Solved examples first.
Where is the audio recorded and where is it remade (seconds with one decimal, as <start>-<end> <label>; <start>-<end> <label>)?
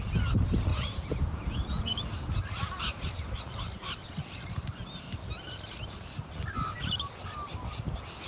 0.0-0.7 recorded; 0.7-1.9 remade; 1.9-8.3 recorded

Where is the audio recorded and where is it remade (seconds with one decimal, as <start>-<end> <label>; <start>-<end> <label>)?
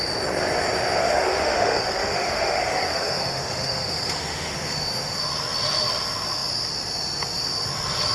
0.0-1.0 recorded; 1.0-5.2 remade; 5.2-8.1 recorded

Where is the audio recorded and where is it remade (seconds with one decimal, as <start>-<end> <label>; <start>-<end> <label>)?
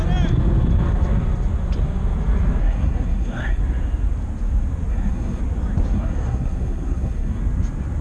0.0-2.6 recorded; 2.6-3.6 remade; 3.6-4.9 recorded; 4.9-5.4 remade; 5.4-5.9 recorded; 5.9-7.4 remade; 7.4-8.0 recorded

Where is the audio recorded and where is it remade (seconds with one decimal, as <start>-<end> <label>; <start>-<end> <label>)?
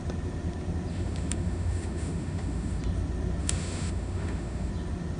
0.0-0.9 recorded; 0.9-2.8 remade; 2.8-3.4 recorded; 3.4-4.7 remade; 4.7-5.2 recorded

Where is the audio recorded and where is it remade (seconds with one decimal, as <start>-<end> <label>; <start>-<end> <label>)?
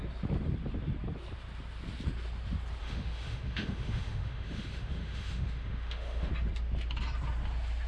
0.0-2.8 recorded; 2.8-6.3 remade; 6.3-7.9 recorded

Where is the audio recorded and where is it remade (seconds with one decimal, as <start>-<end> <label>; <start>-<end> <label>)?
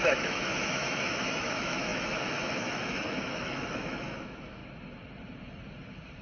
0.0-4.6 remade; 4.6-6.2 recorded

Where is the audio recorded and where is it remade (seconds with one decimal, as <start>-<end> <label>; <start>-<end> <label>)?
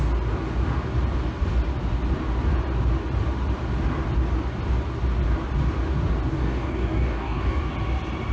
0.0-6.3 recorded; 6.3-7.7 remade; 7.7-8.3 recorded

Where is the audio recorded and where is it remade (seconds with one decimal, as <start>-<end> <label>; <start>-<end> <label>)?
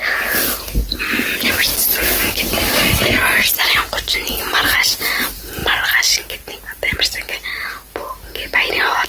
0.0-9.1 recorded